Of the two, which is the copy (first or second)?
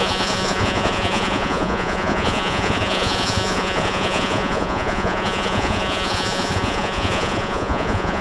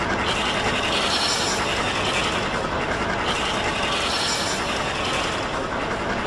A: first